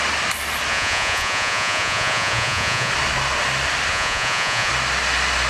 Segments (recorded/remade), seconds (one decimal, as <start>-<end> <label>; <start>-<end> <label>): 0.0-0.7 recorded; 0.7-2.9 remade; 2.9-3.9 recorded; 3.9-4.7 remade; 4.7-5.5 recorded